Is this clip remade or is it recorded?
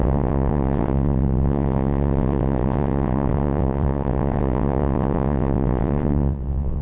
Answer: remade